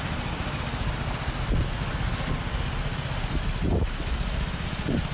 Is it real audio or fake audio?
real